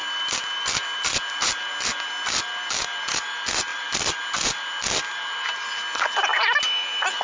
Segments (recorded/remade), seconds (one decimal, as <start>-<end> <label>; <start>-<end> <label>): 0.0-1.7 remade; 1.7-3.7 recorded; 3.7-4.2 remade; 4.2-7.2 recorded